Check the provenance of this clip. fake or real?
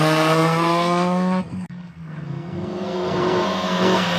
fake